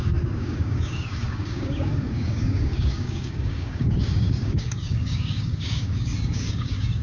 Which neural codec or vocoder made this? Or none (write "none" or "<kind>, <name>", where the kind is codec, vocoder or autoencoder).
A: codec, DAC